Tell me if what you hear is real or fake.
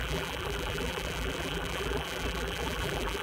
fake